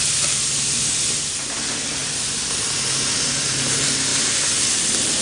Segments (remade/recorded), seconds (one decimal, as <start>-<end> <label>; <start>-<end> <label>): 0.0-4.1 recorded; 4.1-5.2 remade